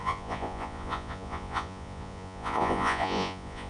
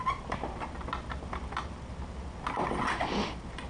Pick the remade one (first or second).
first